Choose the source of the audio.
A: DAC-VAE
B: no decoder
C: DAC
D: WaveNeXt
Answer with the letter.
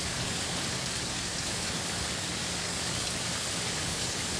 C